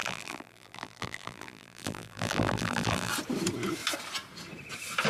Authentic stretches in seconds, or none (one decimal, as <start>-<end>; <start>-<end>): 3.1-5.1